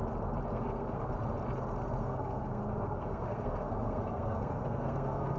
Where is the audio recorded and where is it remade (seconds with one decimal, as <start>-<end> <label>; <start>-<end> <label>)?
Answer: 0.0-0.5 recorded; 0.5-1.1 remade; 1.1-2.0 recorded; 2.0-5.4 remade